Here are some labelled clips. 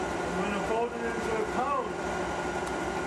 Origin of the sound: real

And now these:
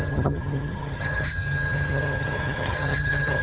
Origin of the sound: fake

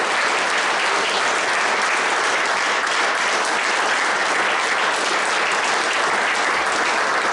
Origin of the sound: real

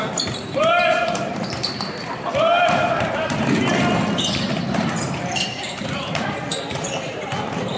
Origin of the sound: fake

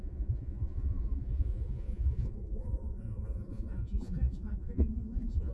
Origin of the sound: fake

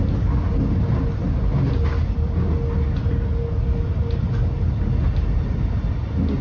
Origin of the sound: real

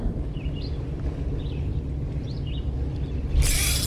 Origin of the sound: real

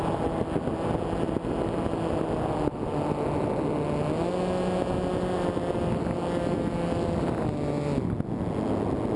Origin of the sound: real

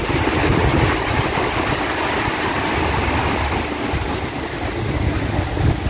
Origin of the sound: real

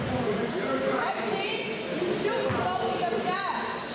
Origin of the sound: real